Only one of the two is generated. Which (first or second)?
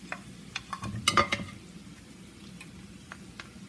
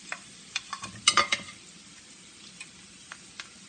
second